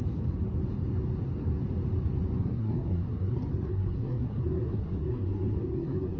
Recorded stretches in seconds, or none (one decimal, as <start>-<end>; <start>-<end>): 0.0-2.4